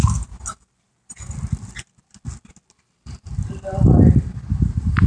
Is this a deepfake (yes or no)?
no